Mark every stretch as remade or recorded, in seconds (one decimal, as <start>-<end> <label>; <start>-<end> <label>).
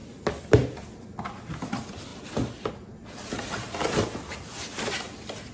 0.0-5.5 recorded